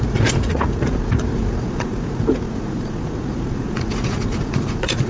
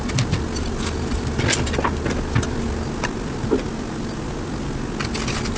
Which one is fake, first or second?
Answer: first